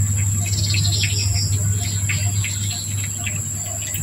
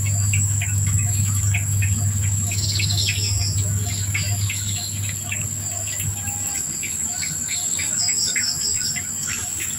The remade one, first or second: second